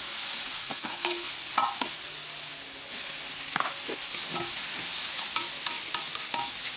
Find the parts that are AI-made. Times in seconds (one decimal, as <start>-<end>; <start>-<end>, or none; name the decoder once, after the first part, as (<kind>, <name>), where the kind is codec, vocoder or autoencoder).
0.6-1.3 (codec, SNAC)